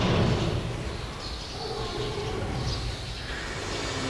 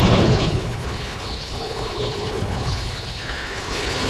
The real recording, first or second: first